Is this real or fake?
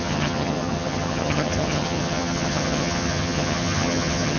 fake